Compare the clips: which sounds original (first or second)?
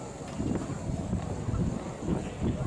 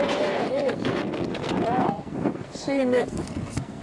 first